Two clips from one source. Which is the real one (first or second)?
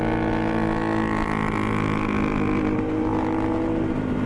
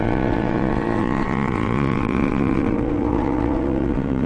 first